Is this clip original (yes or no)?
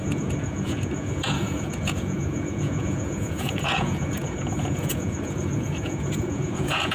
no